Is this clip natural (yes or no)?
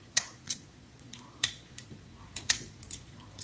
no